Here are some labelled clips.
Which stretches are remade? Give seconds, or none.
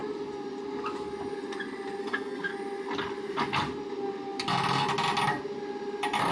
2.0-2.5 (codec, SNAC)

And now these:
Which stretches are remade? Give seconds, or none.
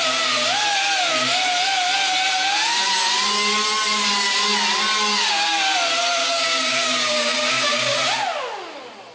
6.2-8.0 (codec, DAC)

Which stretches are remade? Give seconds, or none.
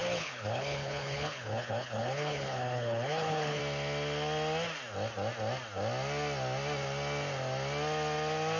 0.0-3.6 (codec, HILCodec)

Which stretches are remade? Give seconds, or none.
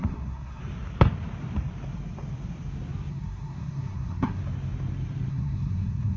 0.0-0.6 (codec, SNAC); 3.1-4.4; 5.3-6.2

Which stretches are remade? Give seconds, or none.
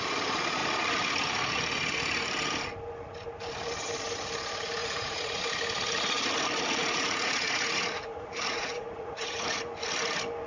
4.8-5.4 (vocoder, Vocos); 6.8-9.7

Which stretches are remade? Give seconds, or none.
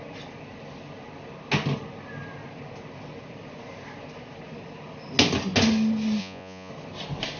6.2-6.7 (vocoder, Vocos)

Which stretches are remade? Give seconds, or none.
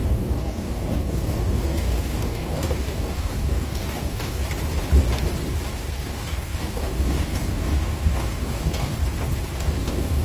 0.0-4.4 (codec, DAC); 5.9-9.0; 9.6-10.2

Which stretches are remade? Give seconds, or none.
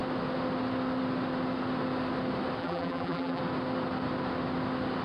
2.6-3.4 (vocoder, BigVGAN v2)